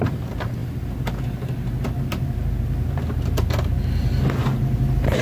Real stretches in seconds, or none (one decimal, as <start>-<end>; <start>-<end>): 0.0-5.2